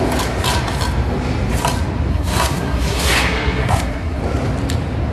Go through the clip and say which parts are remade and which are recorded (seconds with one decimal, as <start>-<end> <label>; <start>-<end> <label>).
0.0-2.1 recorded; 2.1-4.2 remade; 4.2-5.1 recorded